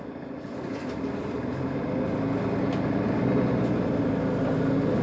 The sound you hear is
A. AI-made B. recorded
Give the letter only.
B